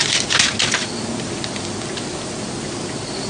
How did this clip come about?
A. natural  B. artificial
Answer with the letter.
A